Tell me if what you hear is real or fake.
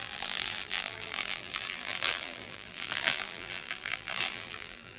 fake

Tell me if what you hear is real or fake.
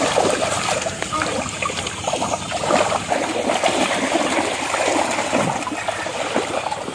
real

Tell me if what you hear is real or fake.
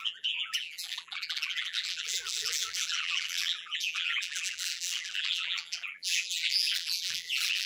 fake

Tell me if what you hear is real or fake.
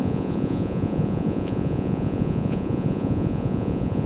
fake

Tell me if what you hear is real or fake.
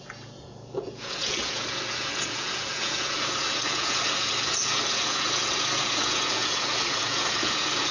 fake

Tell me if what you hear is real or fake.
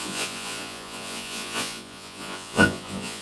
fake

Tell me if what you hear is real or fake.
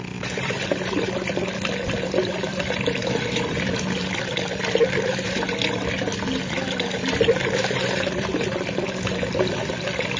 real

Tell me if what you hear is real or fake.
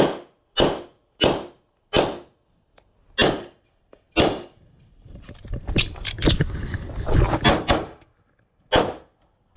real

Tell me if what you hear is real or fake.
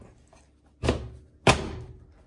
real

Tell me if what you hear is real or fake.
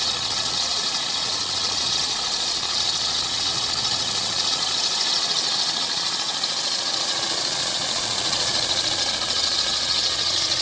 fake